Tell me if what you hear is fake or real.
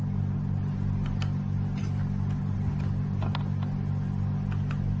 real